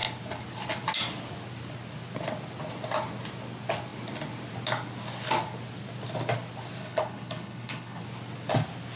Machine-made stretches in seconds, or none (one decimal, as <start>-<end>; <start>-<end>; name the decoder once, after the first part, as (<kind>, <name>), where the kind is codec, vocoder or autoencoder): 6.8-8.0 (codec, HILCodec)